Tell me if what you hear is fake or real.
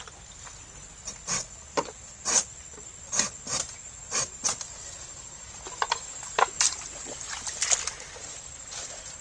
real